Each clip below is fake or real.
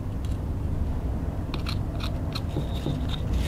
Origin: real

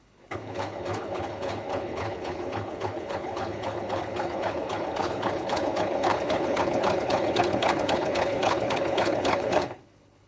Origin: fake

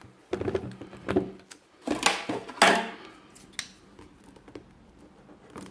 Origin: real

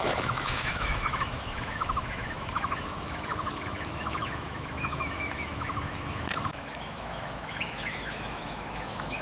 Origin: fake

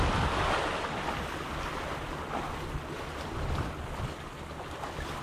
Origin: real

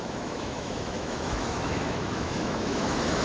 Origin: fake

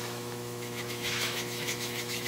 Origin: fake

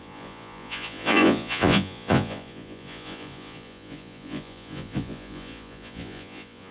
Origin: fake